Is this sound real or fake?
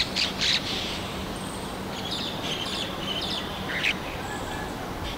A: real